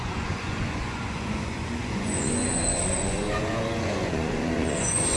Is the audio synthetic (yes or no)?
yes